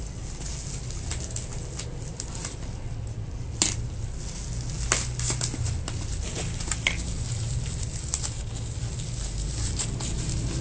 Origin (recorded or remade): recorded